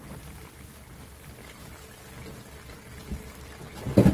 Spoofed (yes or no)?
no